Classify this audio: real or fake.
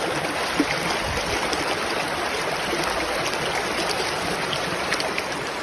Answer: real